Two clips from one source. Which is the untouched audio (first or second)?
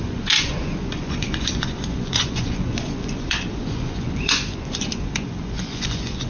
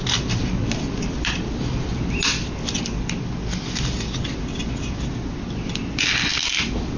second